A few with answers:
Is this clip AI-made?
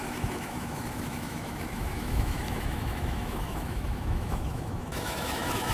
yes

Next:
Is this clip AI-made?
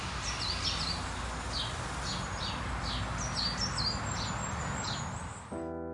no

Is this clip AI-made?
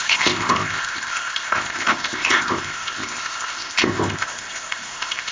yes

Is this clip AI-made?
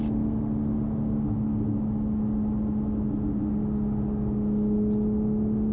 no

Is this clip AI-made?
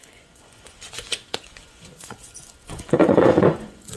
yes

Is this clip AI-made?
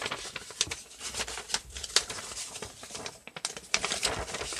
no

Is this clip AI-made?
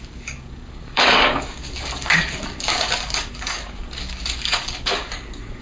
yes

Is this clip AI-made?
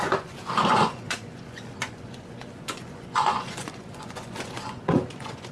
yes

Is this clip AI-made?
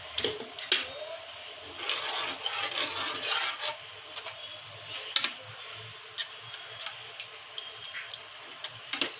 no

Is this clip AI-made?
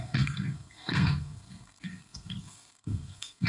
yes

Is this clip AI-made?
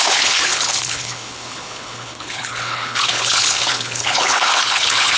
yes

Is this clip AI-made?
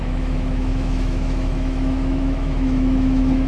yes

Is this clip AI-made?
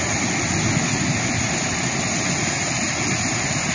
no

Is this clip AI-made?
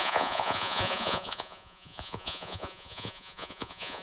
yes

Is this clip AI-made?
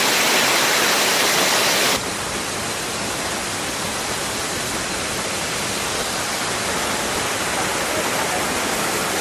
no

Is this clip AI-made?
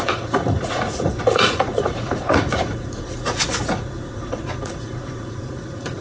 yes